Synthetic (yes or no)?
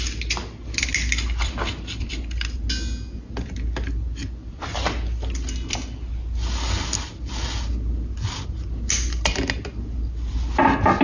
no